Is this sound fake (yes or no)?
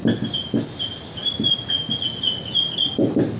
no